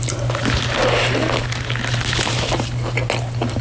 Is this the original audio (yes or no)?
yes